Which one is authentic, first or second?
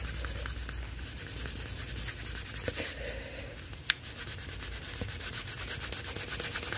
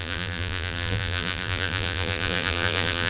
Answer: first